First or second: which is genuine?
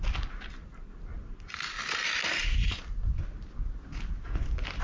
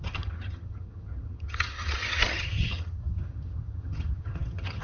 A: first